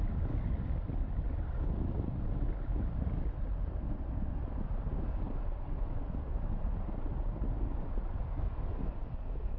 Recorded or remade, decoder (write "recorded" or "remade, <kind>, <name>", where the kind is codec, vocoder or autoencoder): recorded